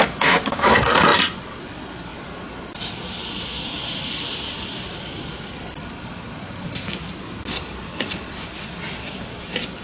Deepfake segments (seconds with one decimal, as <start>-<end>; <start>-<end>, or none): 0.0-0.7